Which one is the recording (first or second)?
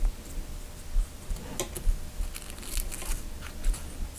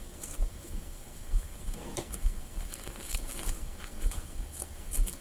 first